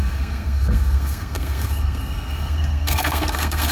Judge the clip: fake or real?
fake